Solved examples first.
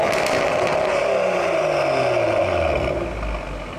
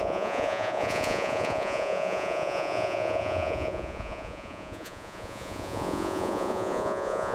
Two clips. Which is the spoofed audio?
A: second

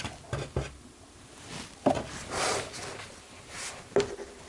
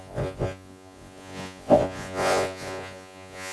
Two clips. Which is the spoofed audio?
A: second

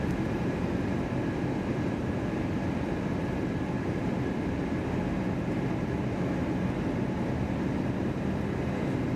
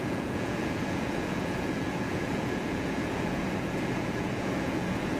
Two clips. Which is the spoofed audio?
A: second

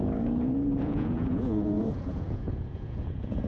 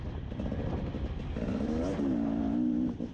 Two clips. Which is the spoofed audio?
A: first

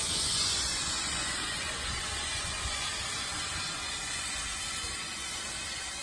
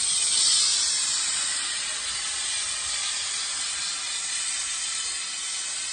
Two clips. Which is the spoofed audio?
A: first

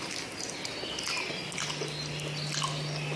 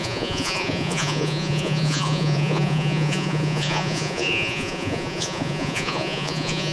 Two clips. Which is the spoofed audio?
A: second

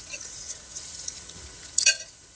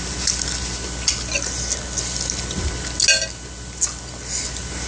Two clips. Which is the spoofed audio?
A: first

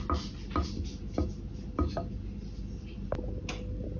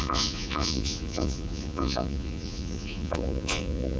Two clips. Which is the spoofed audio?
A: second